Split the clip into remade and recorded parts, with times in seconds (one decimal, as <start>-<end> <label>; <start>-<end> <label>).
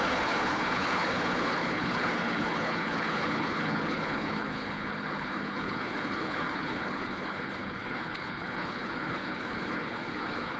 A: 0.0-10.6 remade